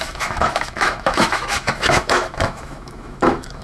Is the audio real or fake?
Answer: fake